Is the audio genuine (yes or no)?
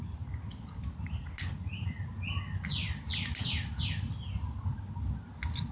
yes